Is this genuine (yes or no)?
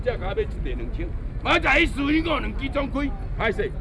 yes